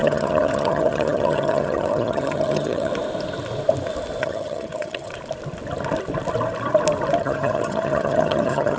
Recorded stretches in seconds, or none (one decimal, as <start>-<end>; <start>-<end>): 2.9-4.2; 5.1-7.2